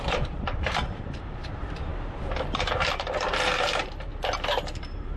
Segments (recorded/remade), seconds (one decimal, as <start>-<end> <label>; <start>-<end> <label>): 0.0-1.9 remade; 1.9-2.8 recorded; 2.8-4.1 remade; 4.1-4.6 recorded; 4.6-5.2 remade